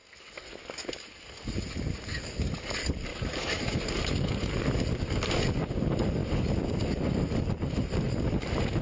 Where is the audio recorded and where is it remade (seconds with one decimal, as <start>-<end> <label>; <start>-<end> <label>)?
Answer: 0.0-3.1 recorded; 3.1-3.8 remade; 3.8-8.8 recorded